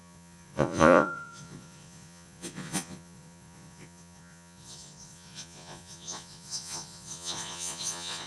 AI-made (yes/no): yes